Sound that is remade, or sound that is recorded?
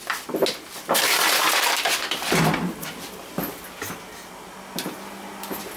recorded